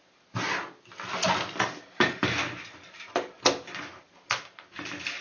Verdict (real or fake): real